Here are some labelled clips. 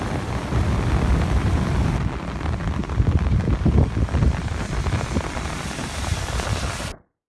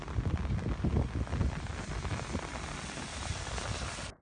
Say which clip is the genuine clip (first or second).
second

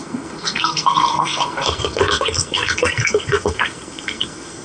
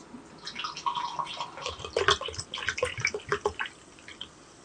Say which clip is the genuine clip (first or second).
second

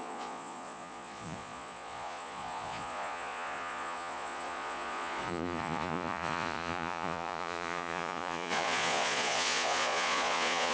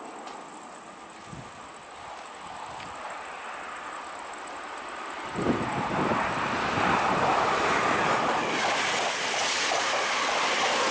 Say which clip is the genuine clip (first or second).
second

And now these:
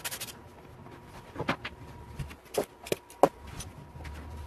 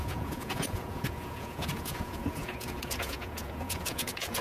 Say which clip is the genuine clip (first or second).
first